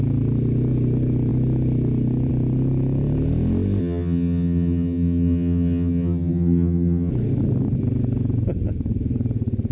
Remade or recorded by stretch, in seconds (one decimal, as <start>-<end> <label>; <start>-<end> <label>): 0.0-3.8 recorded; 3.8-7.1 remade; 7.1-9.7 recorded